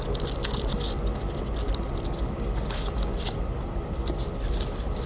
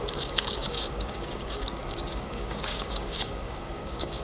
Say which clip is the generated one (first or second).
second